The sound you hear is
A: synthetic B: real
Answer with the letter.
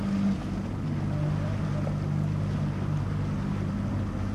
B